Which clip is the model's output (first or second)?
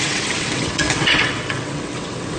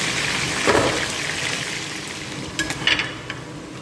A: first